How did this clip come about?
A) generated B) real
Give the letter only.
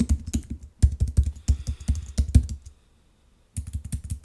B